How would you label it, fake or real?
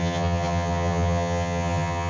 fake